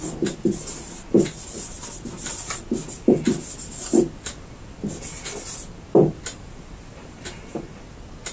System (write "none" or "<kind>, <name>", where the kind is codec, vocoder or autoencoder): none